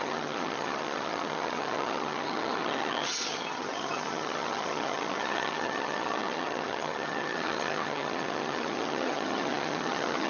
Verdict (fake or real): fake